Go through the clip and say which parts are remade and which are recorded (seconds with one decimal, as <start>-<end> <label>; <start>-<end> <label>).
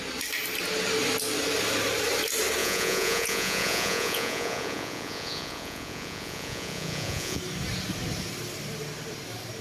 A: 0.0-2.6 recorded; 2.6-7.4 remade; 7.4-9.6 recorded